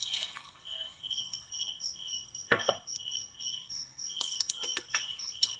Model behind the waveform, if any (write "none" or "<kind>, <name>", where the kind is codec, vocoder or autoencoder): codec, SNAC